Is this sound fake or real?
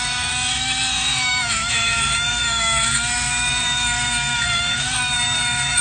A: fake